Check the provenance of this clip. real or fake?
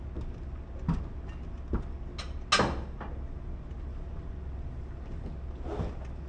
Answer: real